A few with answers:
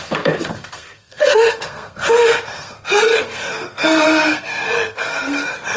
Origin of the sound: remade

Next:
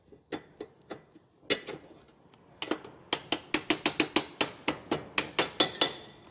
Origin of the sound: recorded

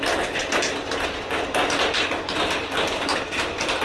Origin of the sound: recorded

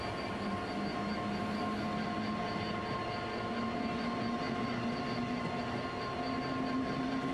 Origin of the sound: recorded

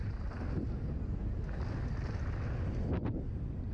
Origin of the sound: recorded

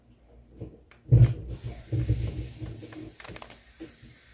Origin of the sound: recorded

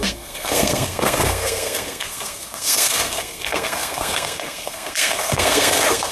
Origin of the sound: remade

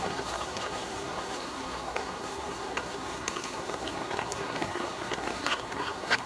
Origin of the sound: remade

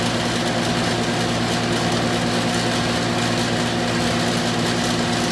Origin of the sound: recorded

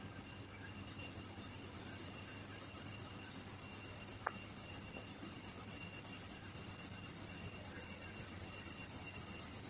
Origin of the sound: recorded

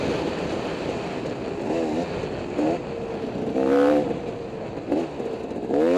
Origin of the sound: recorded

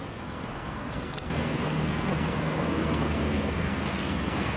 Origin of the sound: remade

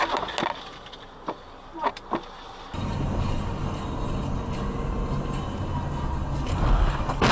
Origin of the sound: recorded